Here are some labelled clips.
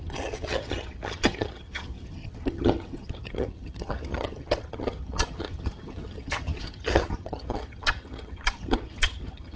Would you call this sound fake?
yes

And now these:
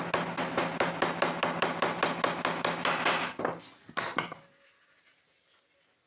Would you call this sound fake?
no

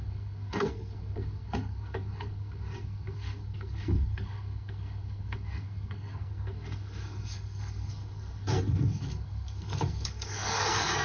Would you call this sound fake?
yes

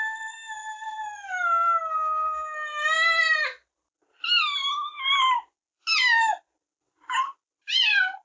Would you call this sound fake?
no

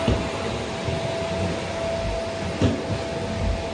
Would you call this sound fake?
no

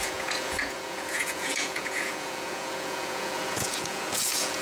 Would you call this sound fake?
yes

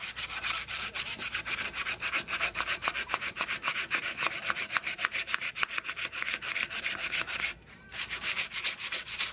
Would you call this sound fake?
yes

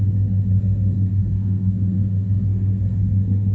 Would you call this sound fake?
yes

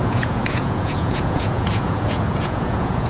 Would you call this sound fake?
yes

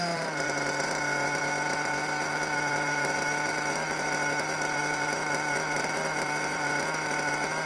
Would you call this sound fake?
yes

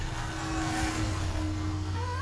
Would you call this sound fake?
yes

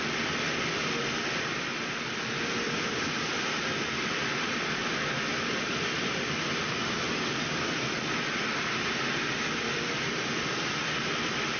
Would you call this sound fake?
yes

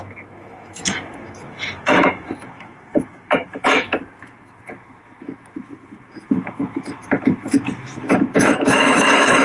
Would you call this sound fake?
yes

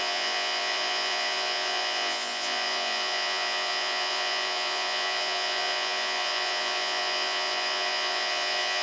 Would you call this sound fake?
yes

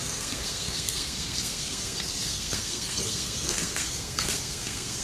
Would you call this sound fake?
yes